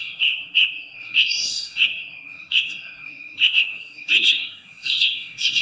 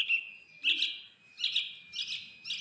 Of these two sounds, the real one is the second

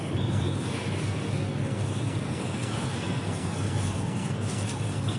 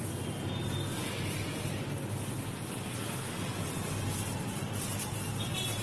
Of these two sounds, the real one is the second